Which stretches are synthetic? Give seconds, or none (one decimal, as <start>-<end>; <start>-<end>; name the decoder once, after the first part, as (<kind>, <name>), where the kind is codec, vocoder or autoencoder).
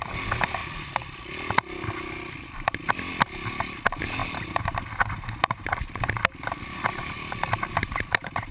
0.6-3.1 (vocoder, BigVGAN v2); 4.2-4.8